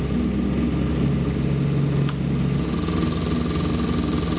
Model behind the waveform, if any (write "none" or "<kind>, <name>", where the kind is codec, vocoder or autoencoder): none